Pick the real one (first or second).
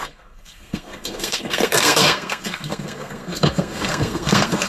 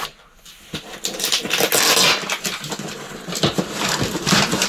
second